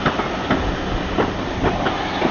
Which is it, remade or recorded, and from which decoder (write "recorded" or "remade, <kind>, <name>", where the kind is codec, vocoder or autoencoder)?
remade, vocoder, BigVGAN v2